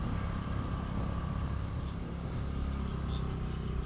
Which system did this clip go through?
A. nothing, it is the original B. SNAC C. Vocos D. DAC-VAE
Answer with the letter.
A